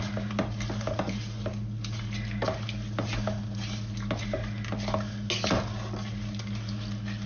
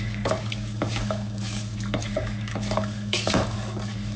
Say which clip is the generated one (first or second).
second